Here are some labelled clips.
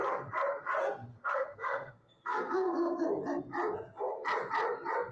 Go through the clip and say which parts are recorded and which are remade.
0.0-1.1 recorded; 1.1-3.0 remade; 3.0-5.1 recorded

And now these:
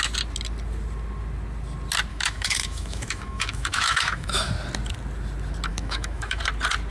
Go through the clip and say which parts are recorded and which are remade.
0.0-2.1 recorded; 2.1-4.5 remade; 4.5-5.7 recorded; 5.7-6.4 remade; 6.4-6.9 recorded